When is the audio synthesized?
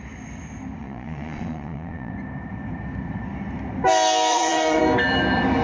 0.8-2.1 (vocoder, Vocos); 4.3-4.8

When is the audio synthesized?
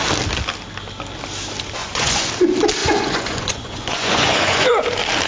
1.8-2.3 (vocoder, Vocos); 2.8-4.7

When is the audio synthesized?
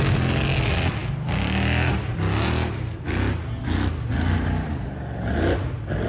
none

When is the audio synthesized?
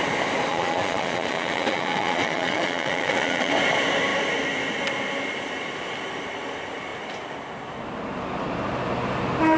0.5-3.5 (vocoder, Vocos)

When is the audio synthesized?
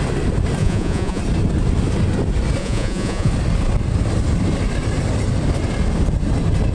0.6-1.2 (vocoder, Vocos); 2.6-3.3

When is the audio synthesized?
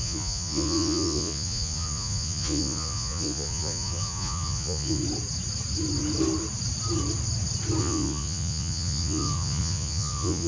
0.0-5.0 (vocoder, Vocos); 7.8-10.5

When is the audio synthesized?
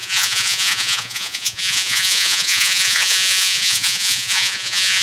0.0-5.0 (vocoder, Vocos)